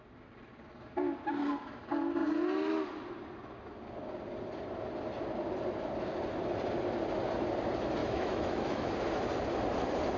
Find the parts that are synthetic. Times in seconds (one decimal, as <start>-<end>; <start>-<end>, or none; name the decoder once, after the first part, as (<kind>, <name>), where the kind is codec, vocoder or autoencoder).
8.0-8.9 (autoencoder, DAC-VAE)